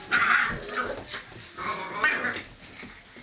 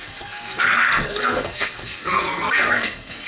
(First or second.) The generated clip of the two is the second